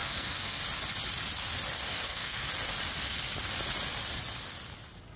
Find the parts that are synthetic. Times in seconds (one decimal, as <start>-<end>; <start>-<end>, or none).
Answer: 0.0-0.6; 1.9-2.5